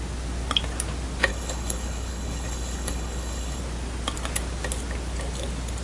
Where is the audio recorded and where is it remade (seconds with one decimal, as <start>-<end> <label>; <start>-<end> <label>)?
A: 0.0-1.3 recorded; 1.3-3.6 remade; 3.6-5.8 recorded